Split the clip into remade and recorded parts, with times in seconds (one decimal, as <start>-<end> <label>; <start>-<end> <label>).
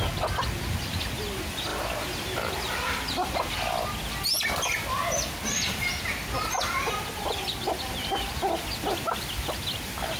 0.0-10.2 recorded